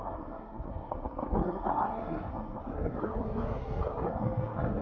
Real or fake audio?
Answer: fake